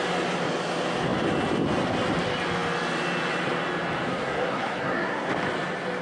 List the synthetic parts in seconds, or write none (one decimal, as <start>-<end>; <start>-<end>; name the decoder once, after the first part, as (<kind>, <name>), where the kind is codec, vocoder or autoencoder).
4.1-5.3 (codec, SNAC)